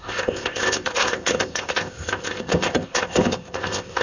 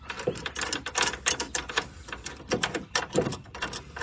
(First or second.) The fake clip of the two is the first